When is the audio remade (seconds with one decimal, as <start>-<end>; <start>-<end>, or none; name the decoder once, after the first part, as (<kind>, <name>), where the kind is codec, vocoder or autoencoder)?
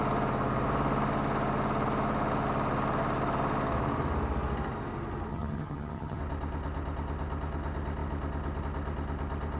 5.3-6.2 (vocoder, HiFi-GAN)